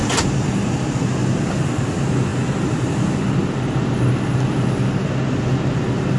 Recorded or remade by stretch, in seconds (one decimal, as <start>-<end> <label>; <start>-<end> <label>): 0.0-2.3 recorded; 2.3-2.9 remade; 2.9-3.4 recorded; 3.4-4.1 remade; 4.1-6.2 recorded